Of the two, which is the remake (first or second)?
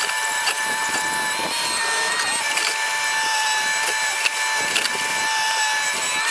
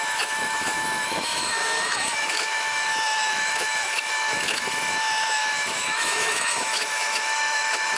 second